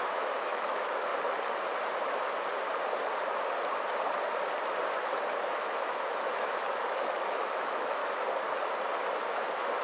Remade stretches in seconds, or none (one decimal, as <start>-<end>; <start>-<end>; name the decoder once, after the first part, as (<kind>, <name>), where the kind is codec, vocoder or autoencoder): 0.0-1.1 (autoencoder, DAC-VAE); 5.4-8.0

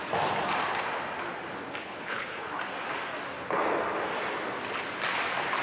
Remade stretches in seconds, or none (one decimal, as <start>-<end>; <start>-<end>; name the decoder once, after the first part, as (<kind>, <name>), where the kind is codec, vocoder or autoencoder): 1.8-2.6 (codec, HILCodec)

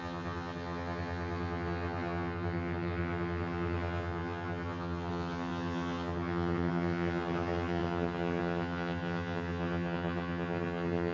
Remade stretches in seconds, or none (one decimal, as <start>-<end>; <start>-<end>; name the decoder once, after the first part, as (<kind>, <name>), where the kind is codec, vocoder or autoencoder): 0.0-11.1 (vocoder, HiFi-GAN)

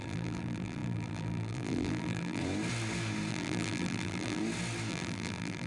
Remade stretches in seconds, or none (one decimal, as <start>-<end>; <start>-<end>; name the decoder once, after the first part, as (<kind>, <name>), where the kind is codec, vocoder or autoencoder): 0.0-2.4 (vocoder, BigVGAN v2); 3.3-4.4; 4.9-5.7

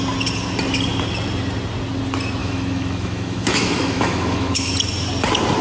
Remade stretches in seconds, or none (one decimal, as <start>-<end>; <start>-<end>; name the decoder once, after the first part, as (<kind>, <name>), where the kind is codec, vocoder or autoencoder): 2.4-4.7 (autoencoder, DAC-VAE)